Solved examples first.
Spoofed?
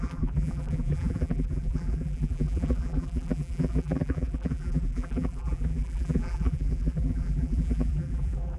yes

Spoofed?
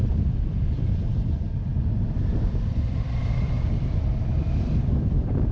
yes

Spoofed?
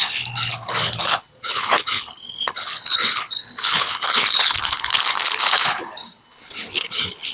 yes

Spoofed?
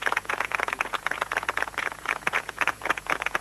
yes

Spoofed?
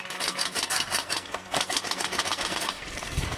yes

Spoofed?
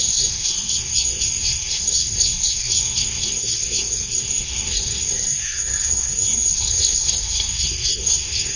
yes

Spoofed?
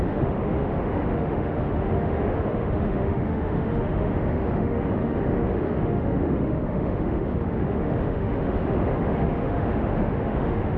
yes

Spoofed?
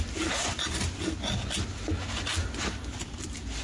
no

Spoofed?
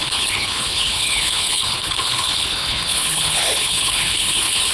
yes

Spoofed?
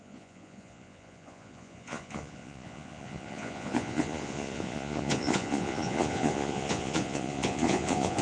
yes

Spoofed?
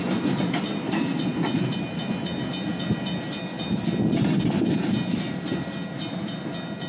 no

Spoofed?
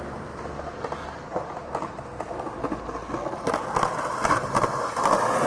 no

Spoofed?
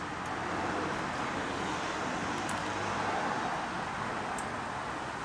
no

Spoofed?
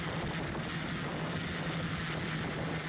no